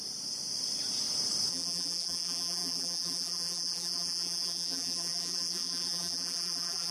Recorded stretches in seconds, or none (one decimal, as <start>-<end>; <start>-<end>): 0.0-1.5